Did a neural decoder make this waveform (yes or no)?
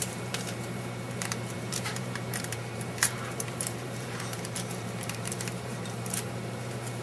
yes